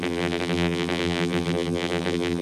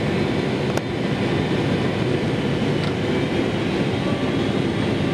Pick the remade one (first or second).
first